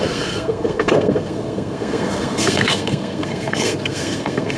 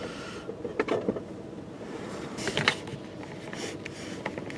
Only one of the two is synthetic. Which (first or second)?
first